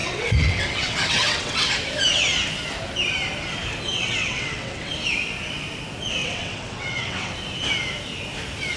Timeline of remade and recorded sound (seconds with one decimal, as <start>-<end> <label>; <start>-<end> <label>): 0.0-1.7 remade; 1.7-3.9 recorded; 3.9-4.9 remade; 4.9-6.2 recorded; 6.2-7.3 remade; 7.3-8.8 recorded